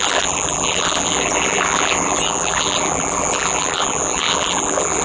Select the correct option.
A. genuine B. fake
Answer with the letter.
B